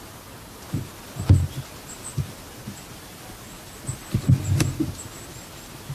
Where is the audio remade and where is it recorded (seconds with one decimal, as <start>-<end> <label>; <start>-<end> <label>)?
0.0-5.9 recorded